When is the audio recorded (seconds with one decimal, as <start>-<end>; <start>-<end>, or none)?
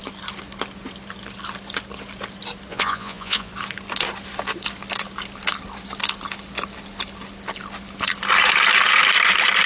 0.0-2.7; 3.5-9.7